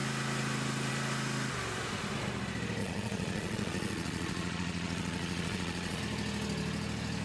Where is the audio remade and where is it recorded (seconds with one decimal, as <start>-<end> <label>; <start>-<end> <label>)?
0.0-2.8 recorded; 2.8-6.0 remade; 6.0-7.2 recorded